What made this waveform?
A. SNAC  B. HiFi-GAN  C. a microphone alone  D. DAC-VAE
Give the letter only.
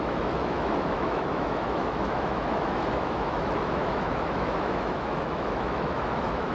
D